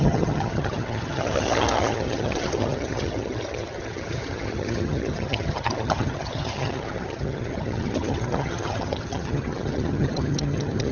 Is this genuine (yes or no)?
no